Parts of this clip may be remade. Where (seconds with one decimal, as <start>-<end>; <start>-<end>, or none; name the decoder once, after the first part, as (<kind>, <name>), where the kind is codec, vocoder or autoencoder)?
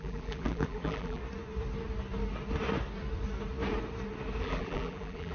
0.0-1.2 (vocoder, BigVGAN v2); 4.4-5.3